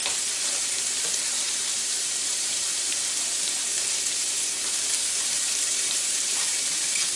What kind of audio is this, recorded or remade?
remade